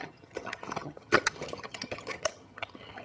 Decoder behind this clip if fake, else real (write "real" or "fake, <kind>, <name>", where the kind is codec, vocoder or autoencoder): fake, vocoder, HiFi-GAN